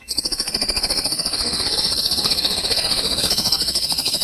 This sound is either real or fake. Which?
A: fake